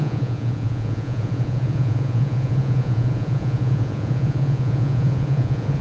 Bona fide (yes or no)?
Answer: no